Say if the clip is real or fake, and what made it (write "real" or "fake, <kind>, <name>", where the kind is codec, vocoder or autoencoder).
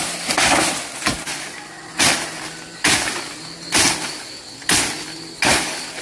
real